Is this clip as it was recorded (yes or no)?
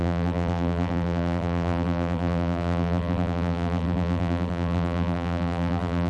no